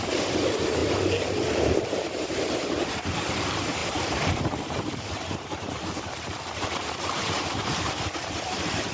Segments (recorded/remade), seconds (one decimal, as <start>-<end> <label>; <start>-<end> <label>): 0.0-0.8 remade; 0.8-1.6 recorded; 1.6-8.9 remade